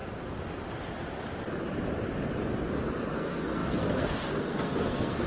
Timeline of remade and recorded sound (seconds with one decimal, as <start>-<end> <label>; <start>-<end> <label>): 0.0-3.1 recorded; 3.1-5.3 remade